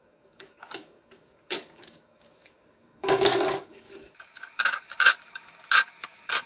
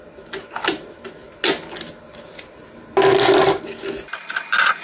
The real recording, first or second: second